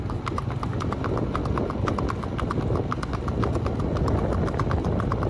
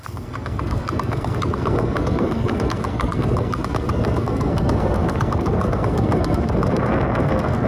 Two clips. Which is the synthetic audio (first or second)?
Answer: second